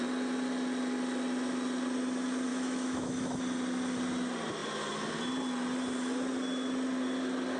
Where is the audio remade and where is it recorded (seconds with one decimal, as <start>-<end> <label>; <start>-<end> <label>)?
0.0-2.5 recorded; 2.5-3.4 remade; 3.4-7.6 recorded

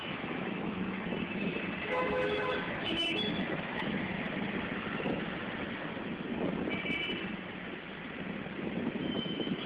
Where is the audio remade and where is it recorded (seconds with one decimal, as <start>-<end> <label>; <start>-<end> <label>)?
0.0-1.1 remade; 1.1-1.8 recorded; 1.8-4.1 remade; 4.1-9.2 recorded; 9.2-9.7 remade

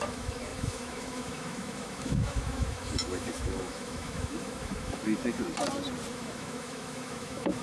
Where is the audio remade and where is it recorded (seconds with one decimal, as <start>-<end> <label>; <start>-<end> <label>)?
0.0-5.4 remade; 5.4-6.1 recorded; 6.1-7.6 remade

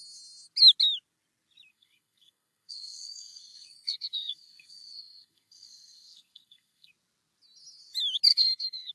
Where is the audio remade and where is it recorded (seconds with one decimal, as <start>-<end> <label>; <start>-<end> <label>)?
0.0-1.7 recorded; 1.7-6.9 remade; 6.9-8.3 recorded; 8.3-8.9 remade

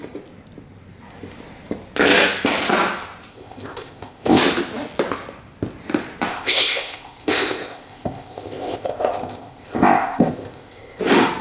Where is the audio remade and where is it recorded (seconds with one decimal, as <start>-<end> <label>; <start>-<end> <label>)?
0.0-3.3 recorded; 3.3-4.4 remade; 4.4-6.3 recorded; 6.3-11.0 remade; 11.0-11.4 recorded

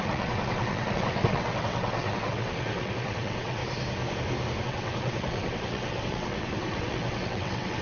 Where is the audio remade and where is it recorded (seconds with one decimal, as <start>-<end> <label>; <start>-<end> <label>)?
0.0-3.6 remade; 3.6-4.6 recorded; 4.6-7.8 remade

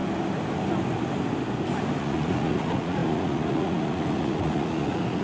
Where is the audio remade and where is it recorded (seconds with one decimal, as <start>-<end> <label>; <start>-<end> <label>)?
0.0-2.0 recorded; 2.0-5.2 remade